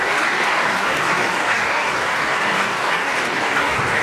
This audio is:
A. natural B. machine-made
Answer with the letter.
B